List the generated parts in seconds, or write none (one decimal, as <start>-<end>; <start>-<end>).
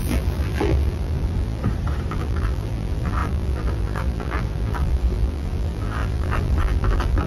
0.0-1.6; 2.1-7.3